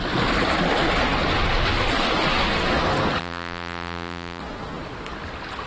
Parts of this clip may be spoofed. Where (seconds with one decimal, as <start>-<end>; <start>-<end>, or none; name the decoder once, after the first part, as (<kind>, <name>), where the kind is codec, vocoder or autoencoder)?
3.2-4.4 (vocoder, BigVGAN v2)